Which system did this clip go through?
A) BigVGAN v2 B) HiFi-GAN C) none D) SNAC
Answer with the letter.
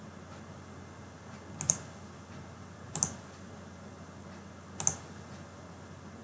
C